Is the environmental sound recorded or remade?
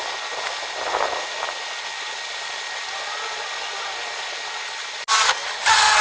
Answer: recorded